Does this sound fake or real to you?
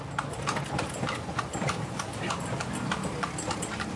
real